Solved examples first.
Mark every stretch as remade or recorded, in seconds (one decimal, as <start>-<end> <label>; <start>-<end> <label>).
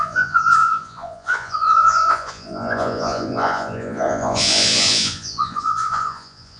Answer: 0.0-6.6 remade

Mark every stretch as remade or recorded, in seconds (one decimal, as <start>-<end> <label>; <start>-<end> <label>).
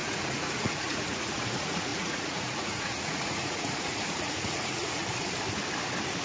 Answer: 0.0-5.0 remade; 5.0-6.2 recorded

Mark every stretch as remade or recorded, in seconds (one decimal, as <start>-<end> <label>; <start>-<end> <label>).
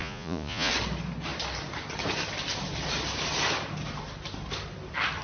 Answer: 0.0-0.7 remade; 0.7-5.2 recorded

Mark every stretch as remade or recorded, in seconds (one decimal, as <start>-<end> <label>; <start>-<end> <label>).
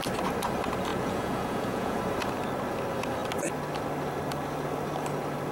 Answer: 0.0-0.9 recorded; 0.9-2.0 remade; 2.0-5.5 recorded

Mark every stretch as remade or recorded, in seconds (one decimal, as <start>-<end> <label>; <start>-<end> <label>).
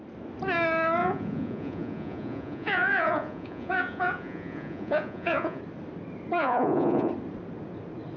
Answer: 0.0-1.0 recorded; 1.0-5.6 remade; 5.6-6.4 recorded; 6.4-7.1 remade; 7.1-8.2 recorded